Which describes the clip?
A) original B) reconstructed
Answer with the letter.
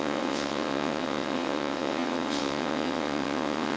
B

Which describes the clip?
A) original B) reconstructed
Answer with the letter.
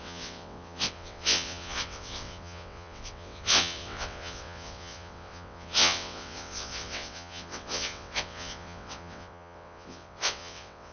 B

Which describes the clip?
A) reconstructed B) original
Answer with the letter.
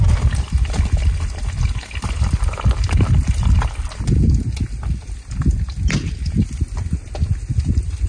B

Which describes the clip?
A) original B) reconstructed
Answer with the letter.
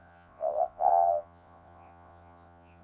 B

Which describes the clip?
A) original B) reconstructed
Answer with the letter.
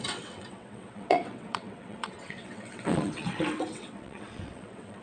B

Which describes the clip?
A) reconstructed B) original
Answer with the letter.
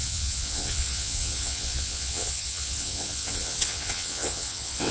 A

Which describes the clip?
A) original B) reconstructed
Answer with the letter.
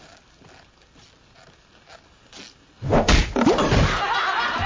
A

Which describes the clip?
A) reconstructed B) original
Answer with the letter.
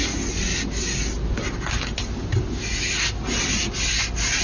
B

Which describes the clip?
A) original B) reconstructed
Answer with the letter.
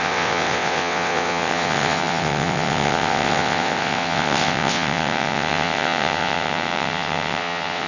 B